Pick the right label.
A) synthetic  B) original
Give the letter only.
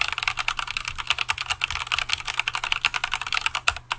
B